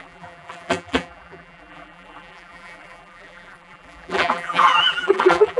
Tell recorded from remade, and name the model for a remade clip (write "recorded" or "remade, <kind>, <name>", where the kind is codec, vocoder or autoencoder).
remade, vocoder, BigVGAN v2